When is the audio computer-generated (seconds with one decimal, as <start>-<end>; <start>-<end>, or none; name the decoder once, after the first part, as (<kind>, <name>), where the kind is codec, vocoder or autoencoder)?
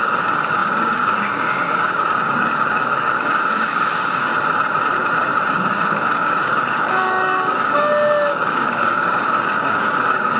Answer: 0.0-4.3 (codec, DAC); 5.5-10.4